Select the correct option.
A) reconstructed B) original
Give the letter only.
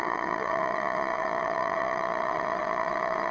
A